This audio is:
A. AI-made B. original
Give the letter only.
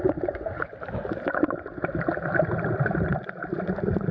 B